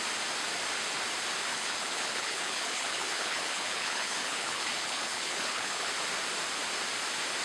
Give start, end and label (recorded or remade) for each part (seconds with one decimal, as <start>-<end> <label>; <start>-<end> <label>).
0.0-1.5 recorded; 1.5-5.9 remade; 5.9-7.4 recorded